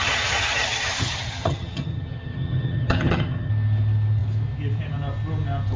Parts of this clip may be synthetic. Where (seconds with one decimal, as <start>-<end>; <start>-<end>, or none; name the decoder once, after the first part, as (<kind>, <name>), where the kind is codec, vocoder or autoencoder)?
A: 0.0-3.5 (vocoder, HiFi-GAN)